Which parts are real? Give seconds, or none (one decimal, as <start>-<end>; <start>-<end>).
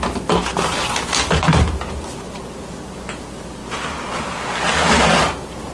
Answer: 0.0-5.7